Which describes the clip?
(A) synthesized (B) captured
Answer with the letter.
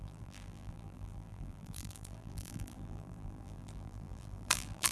A